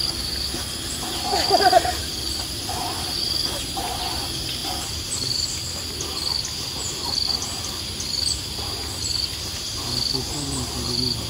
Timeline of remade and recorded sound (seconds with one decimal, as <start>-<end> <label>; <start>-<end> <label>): 0.0-2.0 recorded; 2.0-2.7 remade; 2.7-11.3 recorded